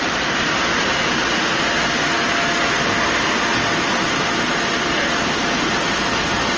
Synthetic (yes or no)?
no